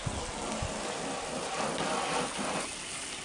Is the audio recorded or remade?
recorded